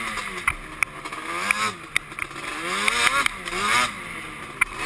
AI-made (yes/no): no